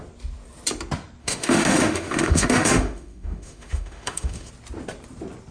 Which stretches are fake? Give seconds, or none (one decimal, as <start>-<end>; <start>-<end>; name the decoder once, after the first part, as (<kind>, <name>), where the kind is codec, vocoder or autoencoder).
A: 1.2-4.5 (autoencoder, DAC-VAE)